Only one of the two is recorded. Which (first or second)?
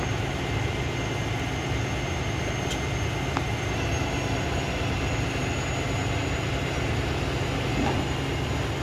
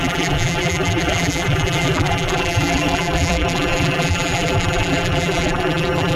first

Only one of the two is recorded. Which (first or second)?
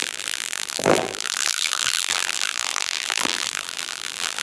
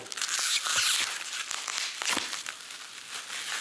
second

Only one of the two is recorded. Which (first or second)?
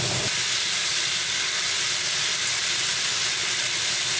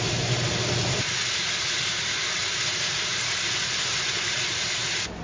first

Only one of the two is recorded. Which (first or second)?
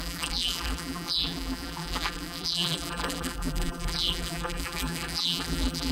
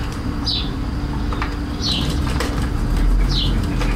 second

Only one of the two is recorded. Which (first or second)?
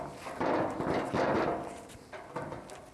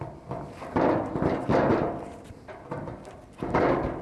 first